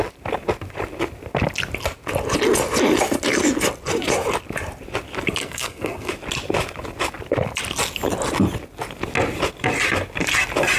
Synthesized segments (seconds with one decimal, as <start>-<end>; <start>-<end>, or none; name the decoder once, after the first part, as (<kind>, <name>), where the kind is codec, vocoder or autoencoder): 5.4-6.1 (codec, SNAC)